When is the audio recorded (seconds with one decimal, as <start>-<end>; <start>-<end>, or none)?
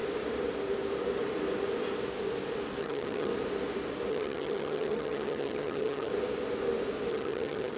0.0-2.8; 3.3-4.1; 6.1-7.1